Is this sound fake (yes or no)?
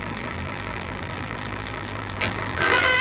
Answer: yes